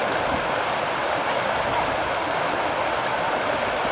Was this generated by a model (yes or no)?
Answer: no